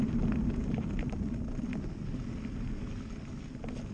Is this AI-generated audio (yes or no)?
no